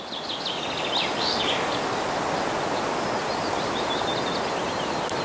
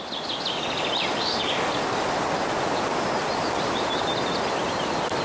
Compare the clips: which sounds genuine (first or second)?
first